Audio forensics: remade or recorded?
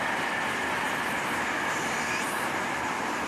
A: remade